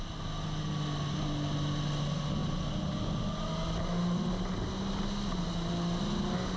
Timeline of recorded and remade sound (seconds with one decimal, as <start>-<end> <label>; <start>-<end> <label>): 0.0-6.6 recorded